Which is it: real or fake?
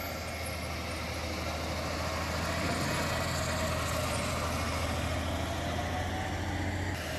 real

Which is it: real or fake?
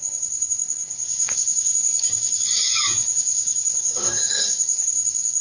fake